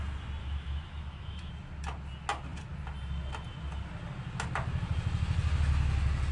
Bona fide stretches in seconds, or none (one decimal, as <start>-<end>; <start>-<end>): 0.0-0.4; 1.5-6.3